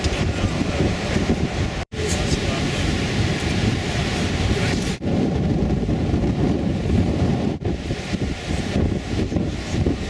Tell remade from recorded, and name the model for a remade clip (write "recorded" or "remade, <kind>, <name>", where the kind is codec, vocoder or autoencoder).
remade, vocoder, BigVGAN v2